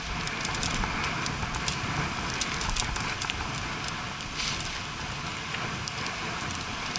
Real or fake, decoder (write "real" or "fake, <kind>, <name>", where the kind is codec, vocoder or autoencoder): real